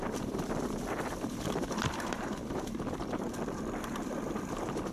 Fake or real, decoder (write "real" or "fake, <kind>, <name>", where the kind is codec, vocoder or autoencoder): fake, vocoder, BigVGAN v2